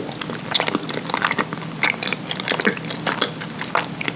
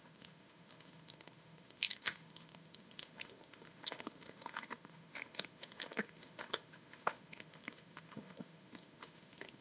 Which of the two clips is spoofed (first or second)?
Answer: second